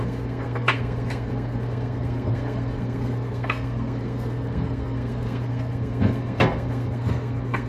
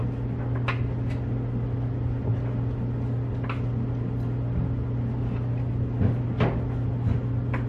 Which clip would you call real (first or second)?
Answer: second